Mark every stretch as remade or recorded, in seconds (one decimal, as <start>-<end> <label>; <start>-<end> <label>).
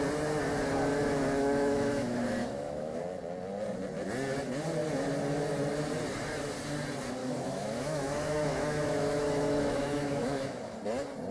0.0-0.9 recorded; 0.9-3.0 remade; 3.0-7.2 recorded; 7.2-10.8 remade; 10.8-11.3 recorded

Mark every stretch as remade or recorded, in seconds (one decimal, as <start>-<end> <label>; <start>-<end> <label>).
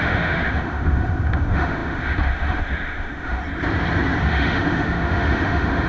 0.0-3.4 remade; 3.4-4.2 recorded; 4.2-5.9 remade